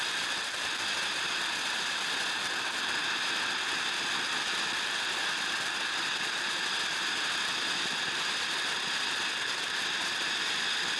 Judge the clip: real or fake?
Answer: real